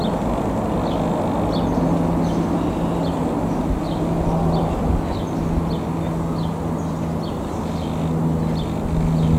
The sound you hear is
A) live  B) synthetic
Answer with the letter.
A